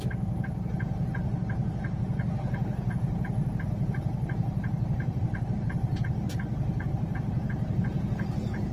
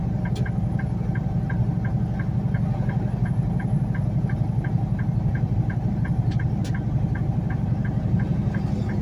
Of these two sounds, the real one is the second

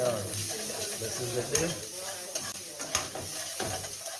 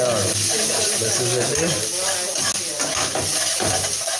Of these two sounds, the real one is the second